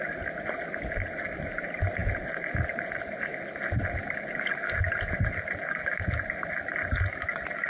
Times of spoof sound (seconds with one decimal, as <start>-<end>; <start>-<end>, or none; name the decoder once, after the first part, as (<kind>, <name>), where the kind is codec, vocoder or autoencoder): none